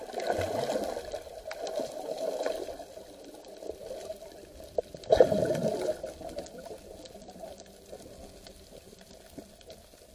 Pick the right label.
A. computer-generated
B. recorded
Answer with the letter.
B